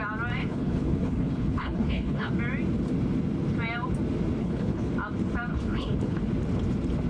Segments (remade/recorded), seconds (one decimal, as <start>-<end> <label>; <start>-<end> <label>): 0.0-0.4 recorded; 0.4-2.3 remade; 2.3-4.4 recorded; 4.4-4.9 remade; 4.9-5.5 recorded; 5.5-6.2 remade; 6.2-7.1 recorded